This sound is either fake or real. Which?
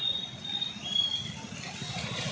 real